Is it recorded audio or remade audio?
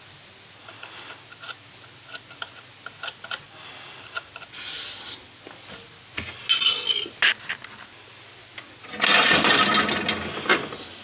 recorded